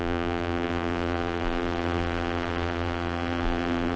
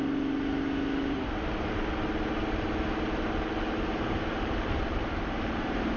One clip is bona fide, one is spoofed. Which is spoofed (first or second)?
first